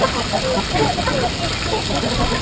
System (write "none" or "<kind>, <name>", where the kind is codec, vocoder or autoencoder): none